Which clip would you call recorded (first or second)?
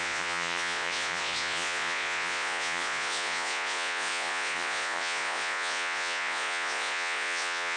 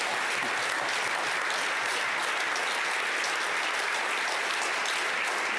second